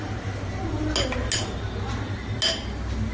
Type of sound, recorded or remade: recorded